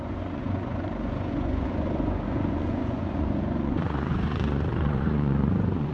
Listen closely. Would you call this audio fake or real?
fake